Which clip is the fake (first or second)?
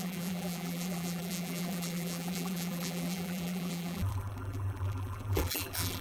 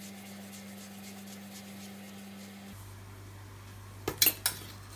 first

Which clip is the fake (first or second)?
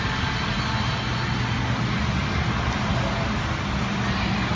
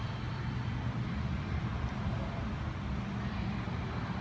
second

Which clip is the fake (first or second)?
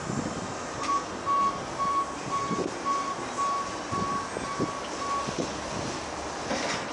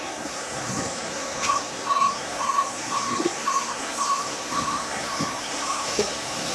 second